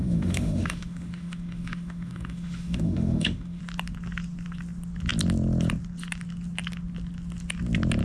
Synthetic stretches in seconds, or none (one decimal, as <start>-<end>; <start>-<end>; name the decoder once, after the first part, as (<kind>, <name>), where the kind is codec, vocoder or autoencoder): 0.0-3.6 (autoencoder, DAC-VAE)